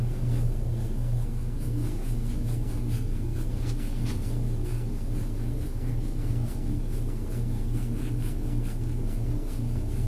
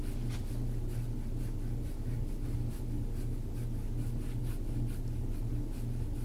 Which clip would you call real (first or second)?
second